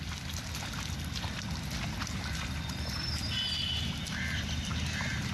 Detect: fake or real real